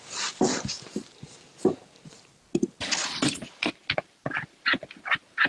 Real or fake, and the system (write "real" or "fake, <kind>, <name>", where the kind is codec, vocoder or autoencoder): real